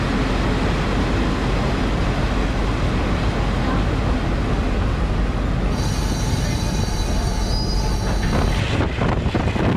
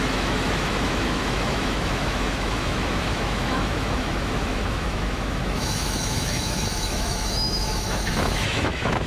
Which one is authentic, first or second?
first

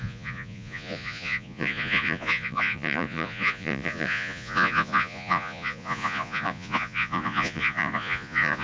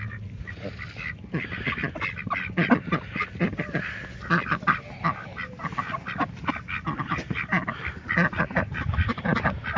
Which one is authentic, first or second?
second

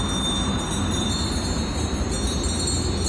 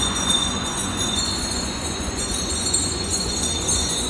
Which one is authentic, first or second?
first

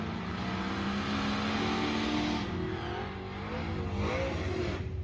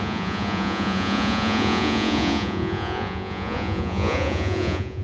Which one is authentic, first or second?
first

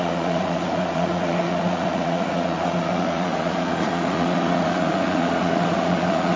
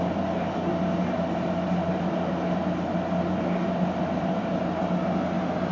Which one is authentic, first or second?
second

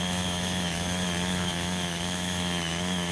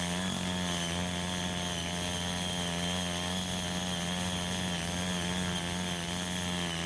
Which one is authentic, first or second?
second